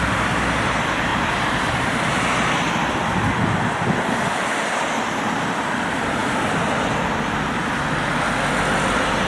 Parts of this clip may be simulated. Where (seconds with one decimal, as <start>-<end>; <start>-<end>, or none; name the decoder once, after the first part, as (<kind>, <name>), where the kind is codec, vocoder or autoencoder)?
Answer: none